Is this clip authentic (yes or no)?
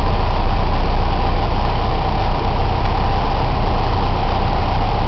yes